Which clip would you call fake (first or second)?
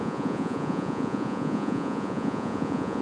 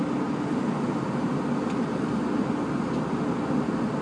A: first